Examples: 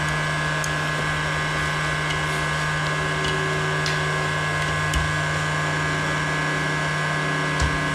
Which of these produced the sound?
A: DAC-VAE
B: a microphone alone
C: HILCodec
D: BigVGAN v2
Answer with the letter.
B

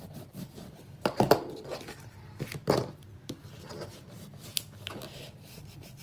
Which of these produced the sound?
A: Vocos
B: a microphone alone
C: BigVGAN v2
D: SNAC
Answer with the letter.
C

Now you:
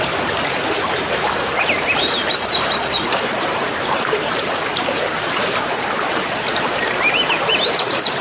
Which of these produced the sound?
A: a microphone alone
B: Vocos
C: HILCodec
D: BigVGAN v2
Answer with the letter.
D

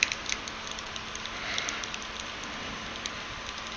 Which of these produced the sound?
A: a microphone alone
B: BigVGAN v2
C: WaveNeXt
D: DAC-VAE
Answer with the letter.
B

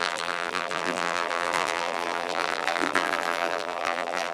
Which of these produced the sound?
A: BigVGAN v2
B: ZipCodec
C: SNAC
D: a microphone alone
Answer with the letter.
A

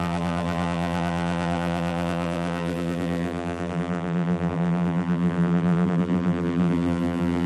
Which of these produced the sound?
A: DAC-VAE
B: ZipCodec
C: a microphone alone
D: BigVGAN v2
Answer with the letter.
D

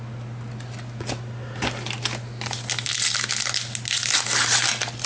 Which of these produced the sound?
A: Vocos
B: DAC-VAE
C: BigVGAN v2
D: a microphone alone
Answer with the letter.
D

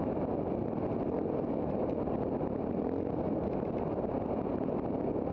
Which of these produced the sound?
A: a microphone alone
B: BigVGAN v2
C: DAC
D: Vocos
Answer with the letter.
A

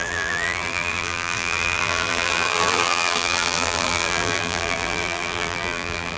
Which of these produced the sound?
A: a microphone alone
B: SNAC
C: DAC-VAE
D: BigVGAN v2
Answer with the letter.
D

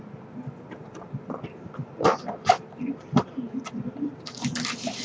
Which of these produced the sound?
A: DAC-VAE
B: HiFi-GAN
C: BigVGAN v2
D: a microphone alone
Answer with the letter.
C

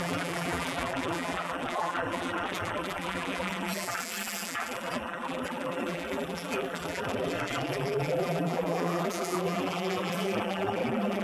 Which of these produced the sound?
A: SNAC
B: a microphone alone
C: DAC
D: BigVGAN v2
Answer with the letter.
D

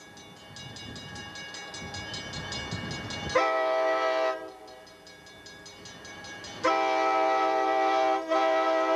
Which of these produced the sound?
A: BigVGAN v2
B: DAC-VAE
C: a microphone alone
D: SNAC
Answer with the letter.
C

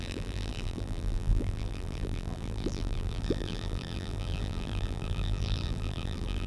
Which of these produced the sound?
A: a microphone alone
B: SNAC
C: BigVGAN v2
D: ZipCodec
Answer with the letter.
C